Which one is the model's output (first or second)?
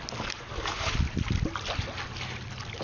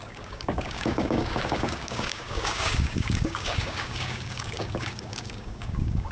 second